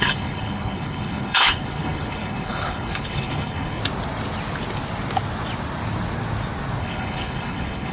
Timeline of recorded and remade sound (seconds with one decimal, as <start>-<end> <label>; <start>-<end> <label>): 0.0-3.8 remade; 3.8-6.8 recorded; 6.8-7.9 remade